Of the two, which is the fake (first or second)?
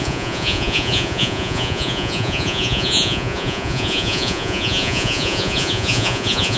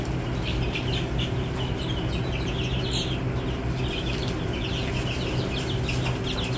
first